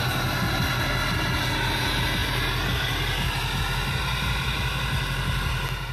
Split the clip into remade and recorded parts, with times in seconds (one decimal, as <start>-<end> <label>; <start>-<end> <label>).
0.0-5.9 recorded